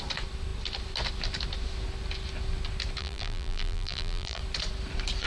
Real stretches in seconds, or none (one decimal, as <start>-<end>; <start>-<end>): 0.0-3.0; 4.4-5.3